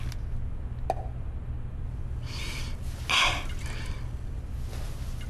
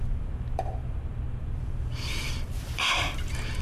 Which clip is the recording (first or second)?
first